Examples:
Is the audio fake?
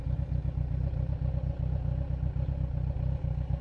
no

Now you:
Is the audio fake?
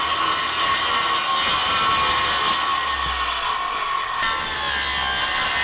no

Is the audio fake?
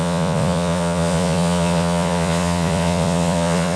yes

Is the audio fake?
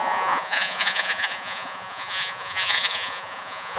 yes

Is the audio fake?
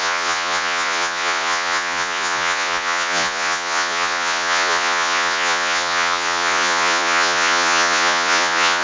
yes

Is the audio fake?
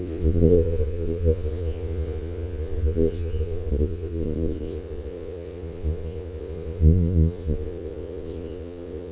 yes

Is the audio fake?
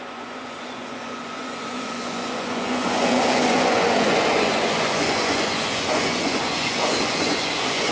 yes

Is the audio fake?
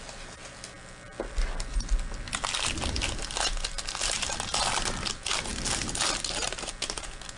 no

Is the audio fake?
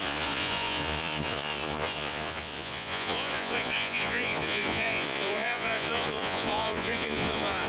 yes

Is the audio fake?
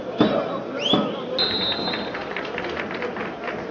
no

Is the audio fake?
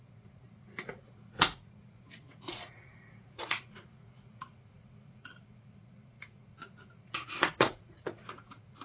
yes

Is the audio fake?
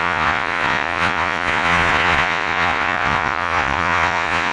yes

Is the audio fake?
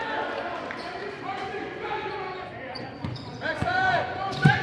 yes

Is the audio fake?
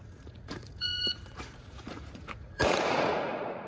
yes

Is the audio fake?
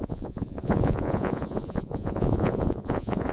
yes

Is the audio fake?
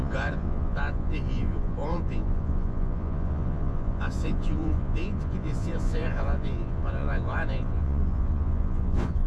yes